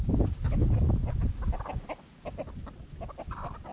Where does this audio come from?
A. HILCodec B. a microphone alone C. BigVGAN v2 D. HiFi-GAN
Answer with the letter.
B